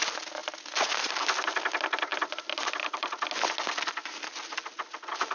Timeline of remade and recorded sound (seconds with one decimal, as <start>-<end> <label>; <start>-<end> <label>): 0.0-5.3 recorded